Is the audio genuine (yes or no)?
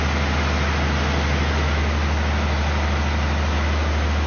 yes